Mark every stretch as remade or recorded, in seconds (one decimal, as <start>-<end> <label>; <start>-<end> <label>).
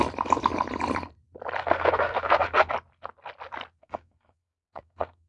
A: 0.0-1.6 recorded; 1.6-2.7 remade; 2.7-3.8 recorded; 3.8-5.3 remade